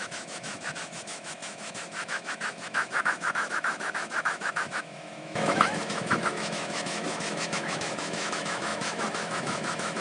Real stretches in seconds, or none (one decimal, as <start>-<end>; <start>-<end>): none